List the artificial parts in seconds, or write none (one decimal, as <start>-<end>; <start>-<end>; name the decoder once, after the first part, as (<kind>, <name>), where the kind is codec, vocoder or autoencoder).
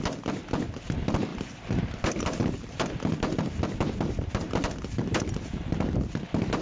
0.0-6.6 (vocoder, BigVGAN v2)